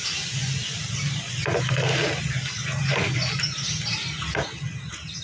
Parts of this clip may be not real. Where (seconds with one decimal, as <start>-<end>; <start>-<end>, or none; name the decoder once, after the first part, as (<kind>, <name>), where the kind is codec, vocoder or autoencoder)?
none